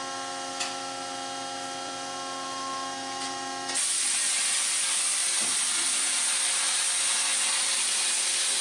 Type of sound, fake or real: real